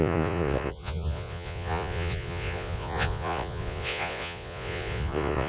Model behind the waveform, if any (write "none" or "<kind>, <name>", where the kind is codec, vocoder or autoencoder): vocoder, Vocos